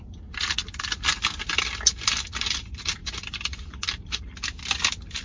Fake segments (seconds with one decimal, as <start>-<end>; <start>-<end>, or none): none